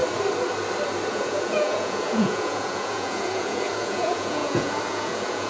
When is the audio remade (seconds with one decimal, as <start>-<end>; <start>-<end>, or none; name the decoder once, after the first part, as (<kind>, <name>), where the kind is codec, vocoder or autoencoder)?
1.1-5.5 (vocoder, Vocos)